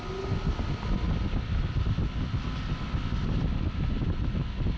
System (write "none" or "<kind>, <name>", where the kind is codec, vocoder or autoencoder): none